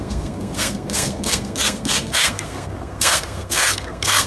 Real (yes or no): no